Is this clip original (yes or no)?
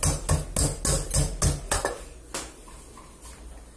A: yes